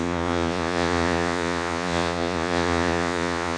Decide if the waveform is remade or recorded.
remade